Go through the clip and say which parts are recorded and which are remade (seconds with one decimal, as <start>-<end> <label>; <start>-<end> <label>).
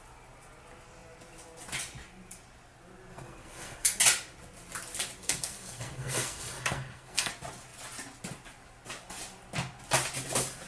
0.0-3.1 recorded; 3.1-4.0 remade; 4.0-5.2 recorded; 5.2-7.3 remade; 7.3-10.7 recorded